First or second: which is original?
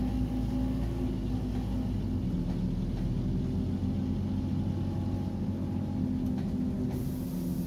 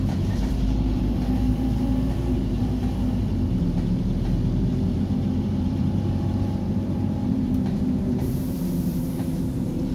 first